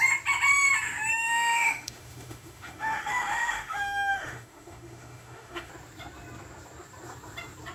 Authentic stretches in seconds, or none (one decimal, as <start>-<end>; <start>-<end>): 0.0-1.1; 5.7-7.7